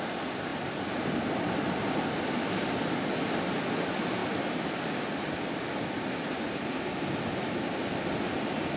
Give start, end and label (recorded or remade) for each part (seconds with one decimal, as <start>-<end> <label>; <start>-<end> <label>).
0.0-8.8 recorded